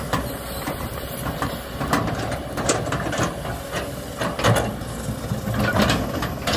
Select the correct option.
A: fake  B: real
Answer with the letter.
B